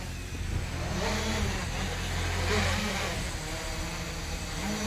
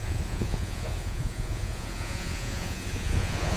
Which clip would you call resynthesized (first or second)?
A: second